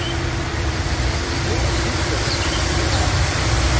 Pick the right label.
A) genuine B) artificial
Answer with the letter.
B